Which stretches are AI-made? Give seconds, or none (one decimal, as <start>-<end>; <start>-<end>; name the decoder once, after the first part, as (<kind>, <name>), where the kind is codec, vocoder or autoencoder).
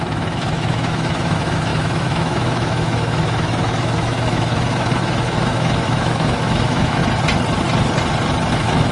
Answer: 0.0-7.0 (autoencoder, DAC-VAE); 8.5-8.9